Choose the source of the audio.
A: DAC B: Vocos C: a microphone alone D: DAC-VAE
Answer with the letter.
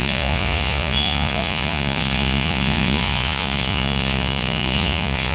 B